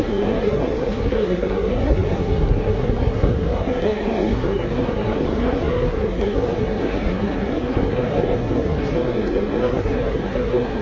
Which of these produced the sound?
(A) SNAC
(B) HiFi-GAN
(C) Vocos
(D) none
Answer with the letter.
A